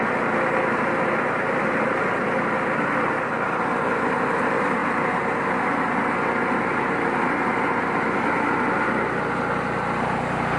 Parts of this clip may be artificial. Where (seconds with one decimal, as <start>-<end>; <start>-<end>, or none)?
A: none

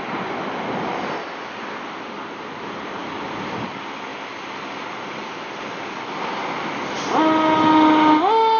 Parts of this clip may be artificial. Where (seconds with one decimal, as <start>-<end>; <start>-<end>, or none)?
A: none

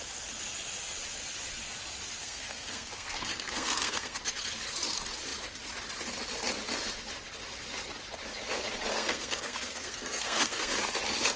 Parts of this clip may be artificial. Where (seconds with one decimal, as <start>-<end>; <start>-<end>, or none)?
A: 2.2-4.2; 8.9-10.7

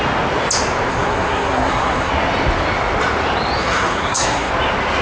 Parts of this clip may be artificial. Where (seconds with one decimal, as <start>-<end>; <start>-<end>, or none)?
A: 0.9-2.1; 3.6-4.5

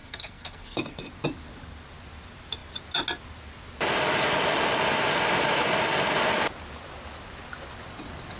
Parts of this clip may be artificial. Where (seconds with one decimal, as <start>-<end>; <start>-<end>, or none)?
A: 0.0-1.1

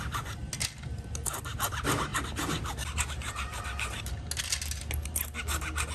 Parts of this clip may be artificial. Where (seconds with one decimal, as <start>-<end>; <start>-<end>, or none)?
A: none

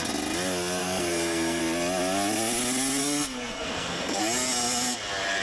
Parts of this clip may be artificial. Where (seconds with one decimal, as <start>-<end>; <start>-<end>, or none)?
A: 0.8-1.6; 3.0-4.2